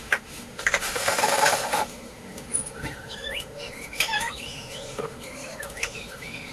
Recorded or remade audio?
remade